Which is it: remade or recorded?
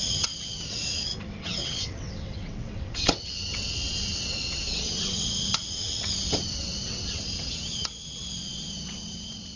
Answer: remade